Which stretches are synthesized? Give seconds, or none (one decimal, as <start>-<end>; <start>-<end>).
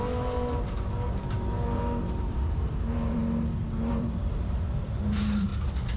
0.0-3.2; 3.9-5.5